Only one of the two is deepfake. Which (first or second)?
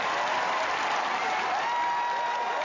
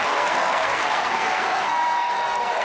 second